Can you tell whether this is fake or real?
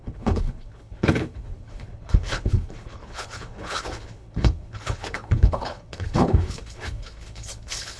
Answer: fake